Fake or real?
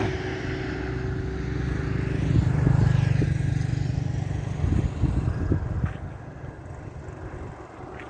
real